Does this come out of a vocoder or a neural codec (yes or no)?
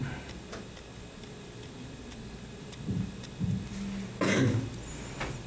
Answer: no